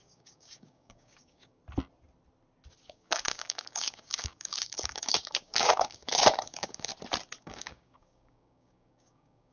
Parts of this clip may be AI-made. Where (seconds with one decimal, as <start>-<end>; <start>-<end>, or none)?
0.0-1.6; 2.8-6.9; 7.4-9.5